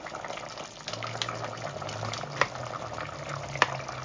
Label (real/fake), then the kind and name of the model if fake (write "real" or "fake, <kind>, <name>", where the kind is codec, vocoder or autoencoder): real